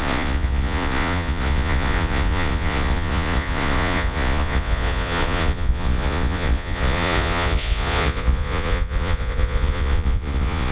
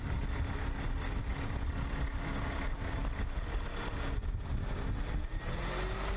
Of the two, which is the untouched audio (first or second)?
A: second